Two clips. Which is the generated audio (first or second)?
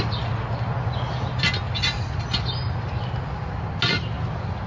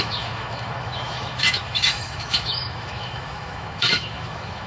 second